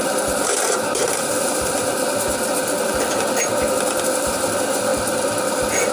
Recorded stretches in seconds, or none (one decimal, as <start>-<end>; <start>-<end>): 0.5-4.0